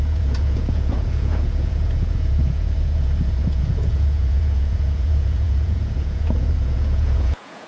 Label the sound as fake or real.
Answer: fake